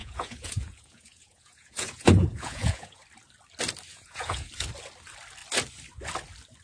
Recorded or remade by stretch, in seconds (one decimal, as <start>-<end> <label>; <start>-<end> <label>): 0.0-3.0 remade; 3.0-3.9 recorded; 3.9-4.5 remade; 4.5-6.6 recorded